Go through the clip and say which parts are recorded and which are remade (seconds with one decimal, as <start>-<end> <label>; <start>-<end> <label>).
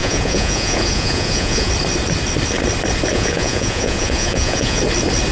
0.0-1.7 remade; 1.7-3.1 recorded; 3.1-4.8 remade; 4.8-5.3 recorded